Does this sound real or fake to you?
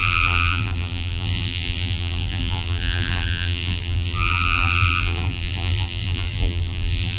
fake